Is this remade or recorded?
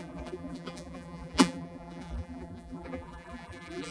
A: remade